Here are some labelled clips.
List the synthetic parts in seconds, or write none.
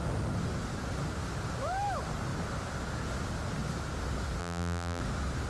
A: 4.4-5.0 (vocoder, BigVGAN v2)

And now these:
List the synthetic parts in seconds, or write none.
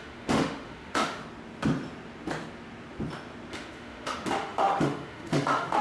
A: 0.0-1.2 (autoencoder, DAC-VAE); 3.5-5.8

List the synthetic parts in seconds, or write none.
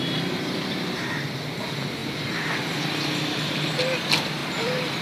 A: none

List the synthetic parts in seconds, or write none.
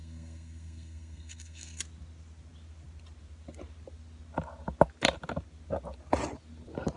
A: 0.0-1.8 (codec, SNAC)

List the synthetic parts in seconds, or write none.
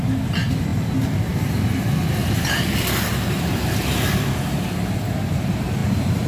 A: 2.2-4.3 (vocoder, BigVGAN v2)